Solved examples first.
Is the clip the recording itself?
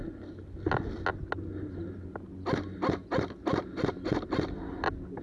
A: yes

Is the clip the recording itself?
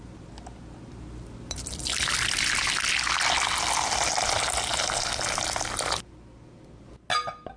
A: yes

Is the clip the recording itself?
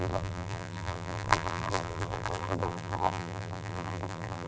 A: no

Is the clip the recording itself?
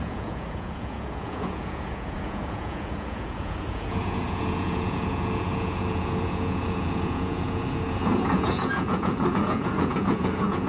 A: no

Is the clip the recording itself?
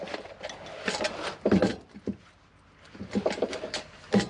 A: yes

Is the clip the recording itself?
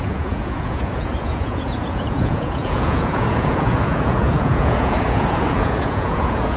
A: no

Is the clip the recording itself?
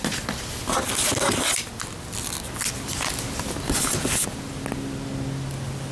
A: yes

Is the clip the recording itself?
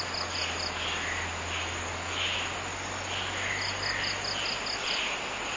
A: yes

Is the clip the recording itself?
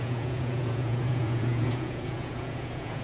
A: no